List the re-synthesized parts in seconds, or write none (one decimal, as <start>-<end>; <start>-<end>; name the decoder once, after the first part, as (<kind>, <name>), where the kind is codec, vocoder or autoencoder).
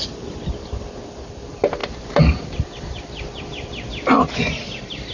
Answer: none